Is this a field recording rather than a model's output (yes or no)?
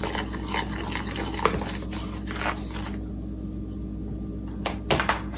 yes